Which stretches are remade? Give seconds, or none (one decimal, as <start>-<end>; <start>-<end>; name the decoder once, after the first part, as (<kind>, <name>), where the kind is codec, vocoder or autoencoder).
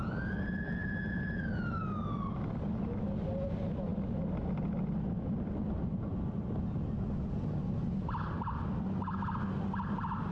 none